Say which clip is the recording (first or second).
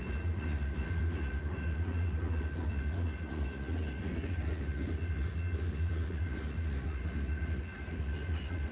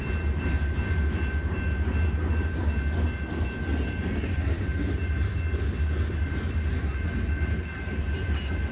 second